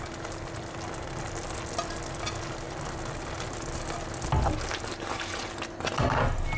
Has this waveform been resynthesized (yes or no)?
no